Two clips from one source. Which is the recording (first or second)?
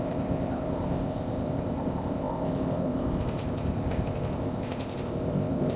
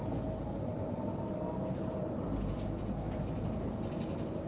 second